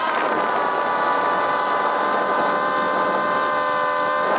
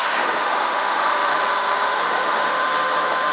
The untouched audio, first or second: first